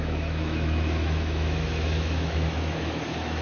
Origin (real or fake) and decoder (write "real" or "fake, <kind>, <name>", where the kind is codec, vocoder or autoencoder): fake, autoencoder, DAC-VAE